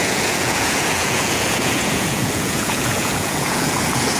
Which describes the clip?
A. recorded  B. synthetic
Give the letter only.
B